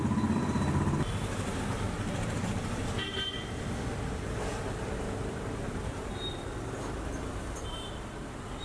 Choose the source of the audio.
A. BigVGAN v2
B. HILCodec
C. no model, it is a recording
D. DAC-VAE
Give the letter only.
C